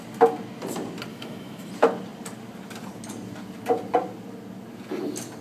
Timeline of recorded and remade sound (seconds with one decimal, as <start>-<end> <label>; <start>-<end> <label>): 0.0-1.1 recorded; 1.1-1.7 remade; 1.7-5.4 recorded